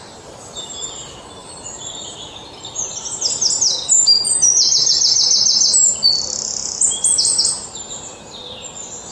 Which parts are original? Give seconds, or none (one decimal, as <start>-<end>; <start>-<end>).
0.0-1.4; 3.2-9.1